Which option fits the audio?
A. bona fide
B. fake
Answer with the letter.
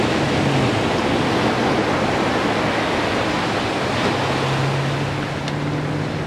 A